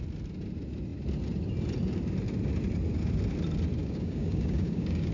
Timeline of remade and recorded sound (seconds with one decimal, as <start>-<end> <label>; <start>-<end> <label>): 0.0-3.8 recorded; 3.8-5.1 remade